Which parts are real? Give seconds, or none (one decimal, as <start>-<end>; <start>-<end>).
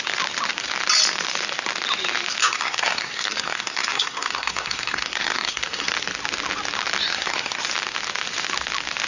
0.0-2.4; 5.9-7.1; 7.6-9.1